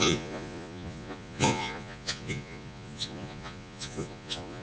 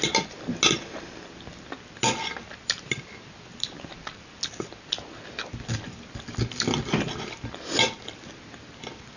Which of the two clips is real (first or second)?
second